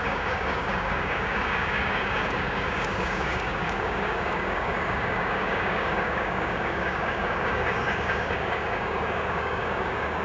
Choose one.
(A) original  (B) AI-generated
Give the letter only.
B